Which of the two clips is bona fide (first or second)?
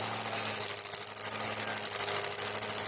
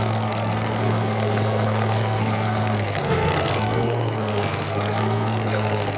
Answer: first